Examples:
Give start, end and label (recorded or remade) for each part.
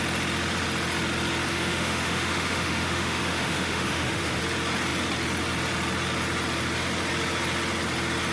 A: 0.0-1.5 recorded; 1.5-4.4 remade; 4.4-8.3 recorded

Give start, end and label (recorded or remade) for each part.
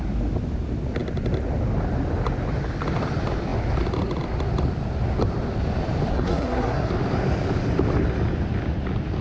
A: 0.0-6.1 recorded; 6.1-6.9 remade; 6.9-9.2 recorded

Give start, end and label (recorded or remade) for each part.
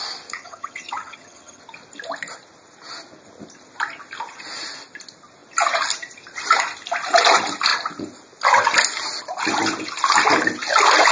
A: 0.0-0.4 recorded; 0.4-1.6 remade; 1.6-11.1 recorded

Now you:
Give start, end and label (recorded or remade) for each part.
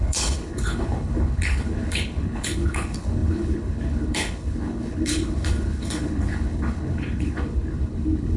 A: 0.0-8.4 remade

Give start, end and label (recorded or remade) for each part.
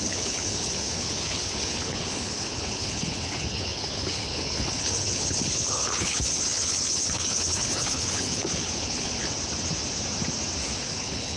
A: 0.0-9.2 remade; 9.2-10.9 recorded; 10.9-11.4 remade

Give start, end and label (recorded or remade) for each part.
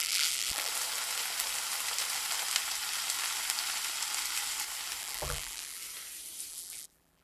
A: 0.0-0.7 remade; 0.7-5.0 recorded; 5.0-5.8 remade; 5.8-6.5 recorded; 6.5-7.2 remade